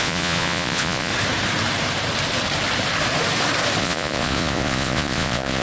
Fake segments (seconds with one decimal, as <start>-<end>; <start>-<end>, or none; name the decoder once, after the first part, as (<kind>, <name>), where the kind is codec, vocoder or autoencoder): 0.0-1.1 (vocoder, Vocos); 3.8-5.6